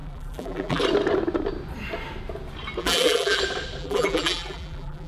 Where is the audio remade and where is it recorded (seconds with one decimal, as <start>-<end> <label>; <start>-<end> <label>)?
0.0-0.8 remade; 0.8-2.8 recorded; 2.8-3.4 remade; 3.4-3.8 recorded; 3.8-5.1 remade